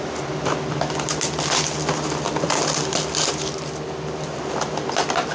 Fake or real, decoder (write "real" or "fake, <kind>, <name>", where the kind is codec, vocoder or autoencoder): real